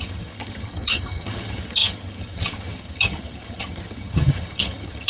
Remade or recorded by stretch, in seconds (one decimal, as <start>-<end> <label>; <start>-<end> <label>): 0.0-5.1 remade